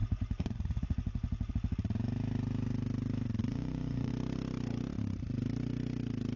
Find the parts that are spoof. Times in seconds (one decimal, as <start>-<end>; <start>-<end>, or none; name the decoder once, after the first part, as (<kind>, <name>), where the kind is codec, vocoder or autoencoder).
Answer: 0.0-1.5 (vocoder, Vocos); 3.4-4.1